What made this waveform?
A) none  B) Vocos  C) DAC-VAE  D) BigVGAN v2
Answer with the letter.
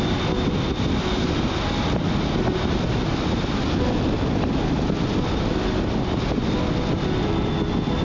A